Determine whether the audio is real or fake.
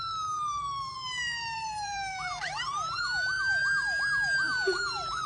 fake